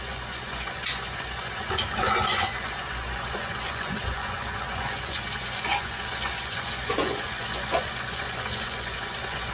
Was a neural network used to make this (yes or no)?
yes